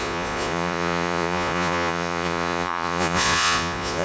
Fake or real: fake